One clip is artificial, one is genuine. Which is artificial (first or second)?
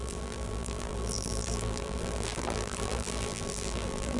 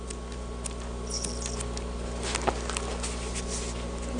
first